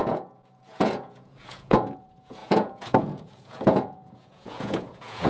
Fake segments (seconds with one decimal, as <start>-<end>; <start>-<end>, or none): 0.0-5.3